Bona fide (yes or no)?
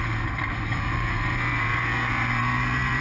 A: no